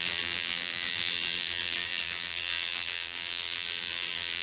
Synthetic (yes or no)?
yes